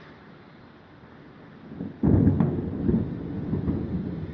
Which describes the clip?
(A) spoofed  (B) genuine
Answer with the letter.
B